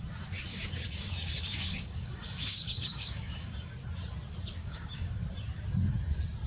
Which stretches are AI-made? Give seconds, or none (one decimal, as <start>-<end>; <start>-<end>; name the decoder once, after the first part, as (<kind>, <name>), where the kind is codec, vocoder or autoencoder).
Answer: 0.5-3.7 (codec, DAC); 4.6-5.2